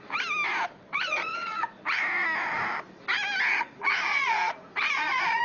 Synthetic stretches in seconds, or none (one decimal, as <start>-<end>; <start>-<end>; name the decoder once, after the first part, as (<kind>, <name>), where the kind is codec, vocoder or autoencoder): 0.9-2.0 (vocoder, Vocos); 3.5-5.4